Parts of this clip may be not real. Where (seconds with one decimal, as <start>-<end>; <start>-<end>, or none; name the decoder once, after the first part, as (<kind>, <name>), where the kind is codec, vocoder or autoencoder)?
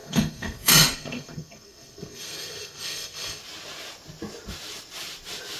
0.0-3.4 (codec, SNAC)